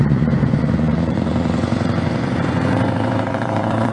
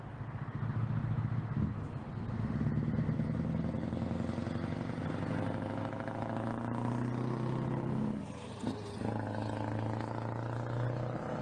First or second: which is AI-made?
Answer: first